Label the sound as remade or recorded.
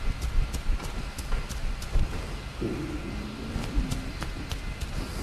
recorded